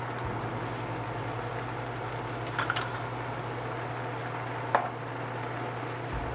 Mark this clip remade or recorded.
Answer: recorded